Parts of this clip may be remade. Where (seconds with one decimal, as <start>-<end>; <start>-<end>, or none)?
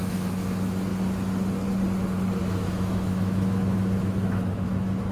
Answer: 0.0-0.9; 2.4-5.1